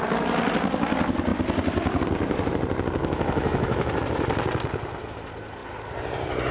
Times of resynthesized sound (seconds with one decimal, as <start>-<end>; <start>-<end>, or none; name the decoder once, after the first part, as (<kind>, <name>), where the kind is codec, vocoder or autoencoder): 3.0-3.9 (autoencoder, DAC-VAE)